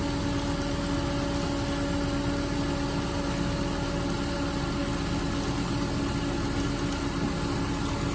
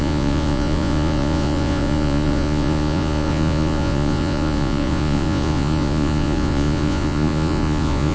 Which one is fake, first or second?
second